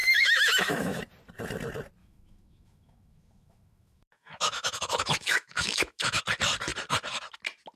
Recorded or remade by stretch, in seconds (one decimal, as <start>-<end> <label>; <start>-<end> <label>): 0.0-1.0 remade; 1.0-2.0 recorded; 2.0-6.2 remade; 6.2-7.8 recorded